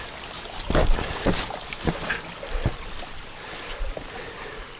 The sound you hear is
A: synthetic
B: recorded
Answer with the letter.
B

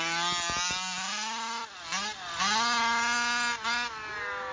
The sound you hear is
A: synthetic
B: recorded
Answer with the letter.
B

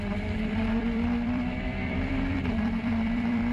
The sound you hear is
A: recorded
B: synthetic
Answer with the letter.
B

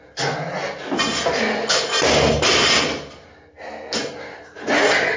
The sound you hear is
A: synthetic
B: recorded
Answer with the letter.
B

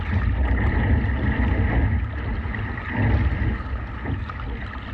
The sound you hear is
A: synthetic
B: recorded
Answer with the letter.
B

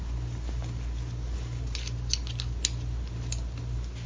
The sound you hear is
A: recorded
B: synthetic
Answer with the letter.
A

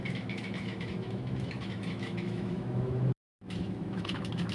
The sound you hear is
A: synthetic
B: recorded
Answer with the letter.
A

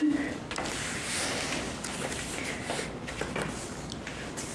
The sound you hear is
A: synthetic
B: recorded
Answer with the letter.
B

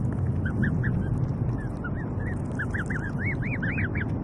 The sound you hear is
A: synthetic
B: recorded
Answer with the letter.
B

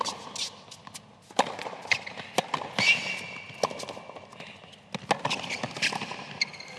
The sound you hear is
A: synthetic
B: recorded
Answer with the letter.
B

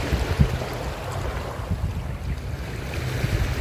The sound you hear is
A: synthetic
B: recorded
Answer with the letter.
B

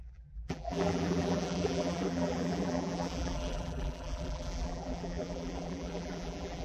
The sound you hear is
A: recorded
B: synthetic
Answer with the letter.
B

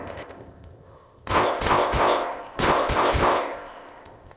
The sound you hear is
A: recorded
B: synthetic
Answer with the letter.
B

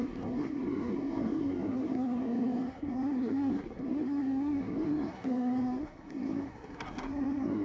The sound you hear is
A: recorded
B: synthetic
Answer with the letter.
B